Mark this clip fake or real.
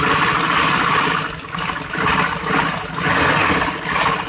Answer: real